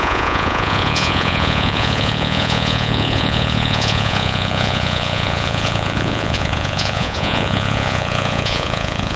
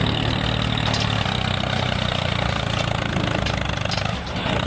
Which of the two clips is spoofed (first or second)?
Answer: first